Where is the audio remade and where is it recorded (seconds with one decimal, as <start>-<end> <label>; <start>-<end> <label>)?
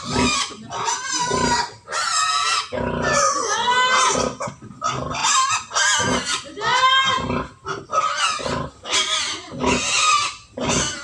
0.0-11.0 recorded